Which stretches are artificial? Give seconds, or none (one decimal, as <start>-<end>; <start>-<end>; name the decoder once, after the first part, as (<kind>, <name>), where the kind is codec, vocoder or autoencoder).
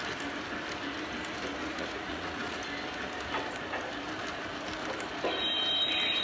1.6-2.6 (vocoder, Vocos)